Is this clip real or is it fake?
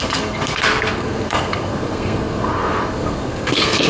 fake